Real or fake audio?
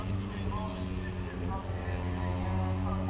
real